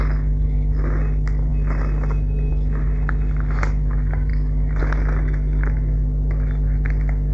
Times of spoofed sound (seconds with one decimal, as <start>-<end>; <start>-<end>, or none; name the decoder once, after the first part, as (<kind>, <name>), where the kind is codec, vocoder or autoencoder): none